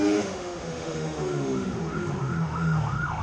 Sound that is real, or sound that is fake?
fake